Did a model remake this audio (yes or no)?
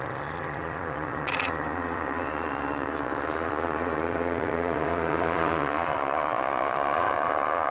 yes